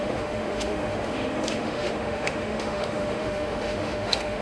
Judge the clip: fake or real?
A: fake